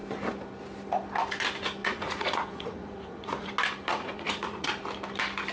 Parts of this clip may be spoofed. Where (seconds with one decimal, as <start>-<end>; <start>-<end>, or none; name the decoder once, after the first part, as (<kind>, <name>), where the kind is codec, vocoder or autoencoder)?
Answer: 1.8-3.5 (vocoder, Vocos); 3.9-4.7